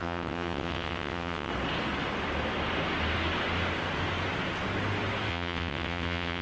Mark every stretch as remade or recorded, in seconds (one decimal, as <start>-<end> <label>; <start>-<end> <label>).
0.0-1.5 remade; 1.5-5.3 recorded; 5.3-6.4 remade